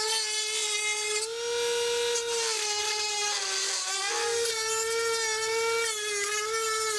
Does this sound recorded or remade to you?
recorded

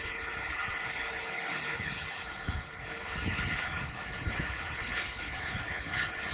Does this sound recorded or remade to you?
remade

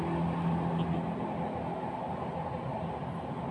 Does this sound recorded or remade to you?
recorded